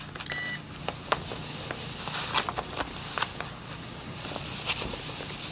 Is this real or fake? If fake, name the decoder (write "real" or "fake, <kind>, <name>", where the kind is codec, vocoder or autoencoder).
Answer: real